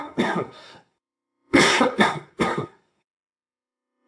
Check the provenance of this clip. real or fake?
fake